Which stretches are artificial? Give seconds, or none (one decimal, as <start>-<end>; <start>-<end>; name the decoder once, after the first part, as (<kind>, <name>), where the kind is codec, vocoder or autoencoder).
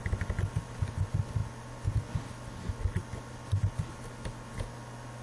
none